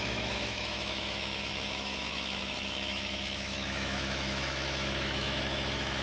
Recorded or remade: remade